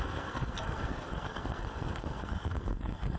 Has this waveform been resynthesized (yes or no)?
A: yes